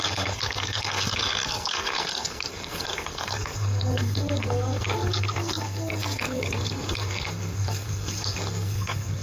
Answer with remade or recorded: remade